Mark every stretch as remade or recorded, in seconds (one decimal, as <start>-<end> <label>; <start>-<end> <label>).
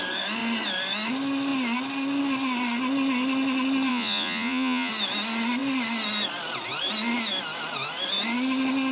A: 0.0-3.9 recorded; 3.9-4.9 remade; 4.9-8.9 recorded